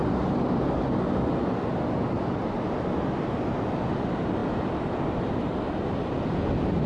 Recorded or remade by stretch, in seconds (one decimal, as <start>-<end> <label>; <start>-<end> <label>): 0.0-6.9 recorded